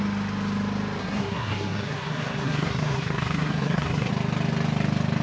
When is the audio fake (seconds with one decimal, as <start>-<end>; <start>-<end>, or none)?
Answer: 1.0-4.1